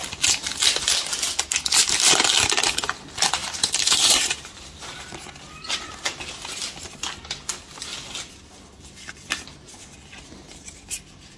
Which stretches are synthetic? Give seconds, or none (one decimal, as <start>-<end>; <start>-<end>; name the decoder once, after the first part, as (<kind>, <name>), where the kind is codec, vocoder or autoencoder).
3.4-6.2 (vocoder, BigVGAN v2)